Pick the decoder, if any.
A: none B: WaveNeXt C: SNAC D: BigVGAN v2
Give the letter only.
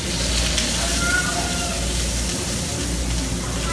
A